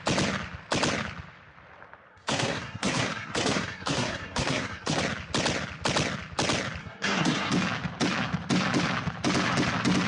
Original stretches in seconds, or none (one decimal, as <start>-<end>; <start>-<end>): 0.0-2.1; 5.0-6.8; 7.5-10.1